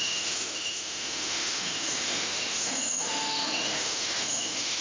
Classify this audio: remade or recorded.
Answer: remade